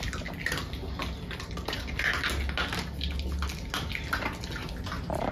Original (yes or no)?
yes